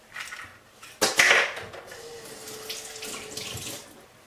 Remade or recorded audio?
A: recorded